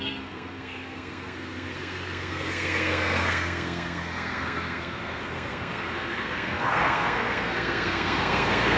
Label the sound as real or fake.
fake